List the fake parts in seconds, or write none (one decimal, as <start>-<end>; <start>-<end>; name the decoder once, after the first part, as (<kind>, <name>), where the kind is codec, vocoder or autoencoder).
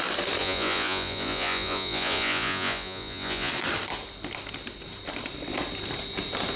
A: 0.4-3.5 (vocoder, Vocos)